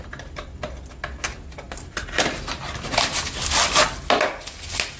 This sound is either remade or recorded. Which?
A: recorded